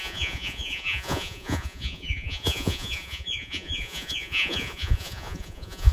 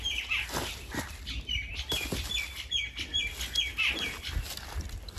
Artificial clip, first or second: first